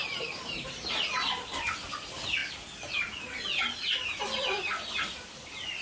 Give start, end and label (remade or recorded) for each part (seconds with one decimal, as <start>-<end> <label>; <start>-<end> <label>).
0.0-5.8 recorded